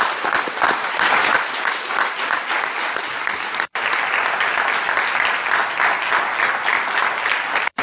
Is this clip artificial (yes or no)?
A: no